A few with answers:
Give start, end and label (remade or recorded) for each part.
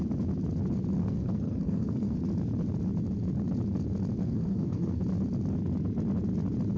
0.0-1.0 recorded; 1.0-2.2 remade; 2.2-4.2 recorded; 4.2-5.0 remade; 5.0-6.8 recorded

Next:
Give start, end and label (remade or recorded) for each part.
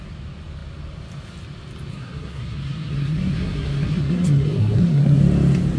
0.0-1.9 recorded; 1.9-5.2 remade; 5.2-5.8 recorded